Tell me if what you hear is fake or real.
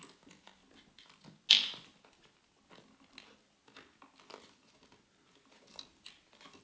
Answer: real